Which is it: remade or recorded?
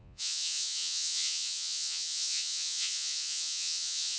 remade